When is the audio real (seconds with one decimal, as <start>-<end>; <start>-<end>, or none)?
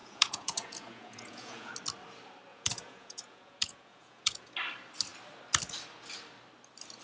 1.7-2.5; 4.5-7.0